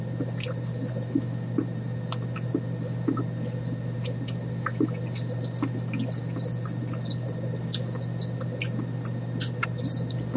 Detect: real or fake real